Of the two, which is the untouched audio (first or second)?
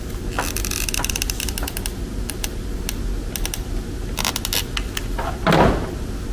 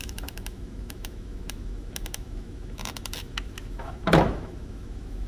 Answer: first